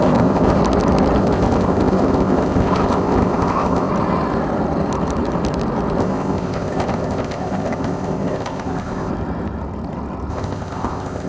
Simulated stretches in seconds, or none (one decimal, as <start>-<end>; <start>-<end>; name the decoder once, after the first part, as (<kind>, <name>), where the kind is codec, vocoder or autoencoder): 0.0-0.6 (codec, ZipCodec); 1.2-3.9; 6.0-9.1; 10.3-11.3